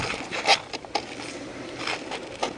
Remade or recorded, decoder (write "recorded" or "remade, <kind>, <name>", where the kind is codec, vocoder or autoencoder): remade, vocoder, BigVGAN v2